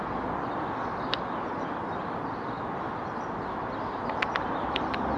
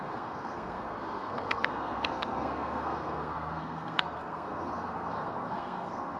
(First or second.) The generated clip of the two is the second